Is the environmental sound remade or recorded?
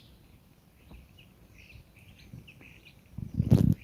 recorded